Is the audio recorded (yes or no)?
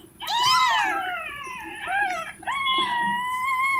no